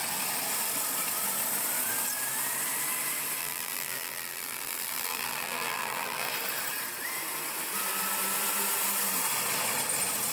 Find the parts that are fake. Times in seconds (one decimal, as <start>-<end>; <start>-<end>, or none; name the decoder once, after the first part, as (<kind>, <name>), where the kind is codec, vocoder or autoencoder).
3.4-6.3 (vocoder, BigVGAN v2)